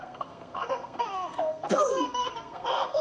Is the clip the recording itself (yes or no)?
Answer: no